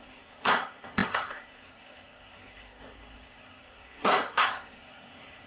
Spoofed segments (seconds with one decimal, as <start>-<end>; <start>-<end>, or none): 0.0-5.5